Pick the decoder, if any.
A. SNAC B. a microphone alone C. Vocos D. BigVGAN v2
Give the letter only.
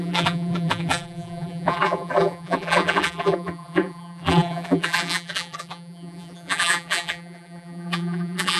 D